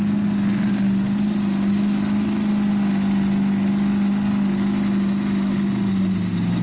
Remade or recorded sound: recorded